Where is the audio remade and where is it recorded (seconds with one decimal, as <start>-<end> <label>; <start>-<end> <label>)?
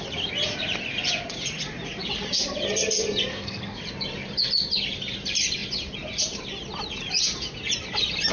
0.0-3.3 recorded; 3.3-3.8 remade; 3.8-8.3 recorded